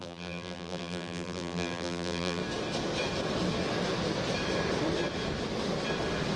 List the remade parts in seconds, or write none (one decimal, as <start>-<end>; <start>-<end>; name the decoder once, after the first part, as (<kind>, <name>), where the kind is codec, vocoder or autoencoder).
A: 0.0-2.4 (vocoder, BigVGAN v2)